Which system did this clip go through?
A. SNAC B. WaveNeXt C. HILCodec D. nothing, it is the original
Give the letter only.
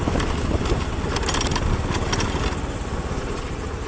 D